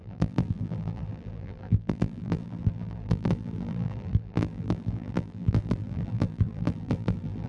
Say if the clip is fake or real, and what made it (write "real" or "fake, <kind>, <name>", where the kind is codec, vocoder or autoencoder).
fake, vocoder, BigVGAN v2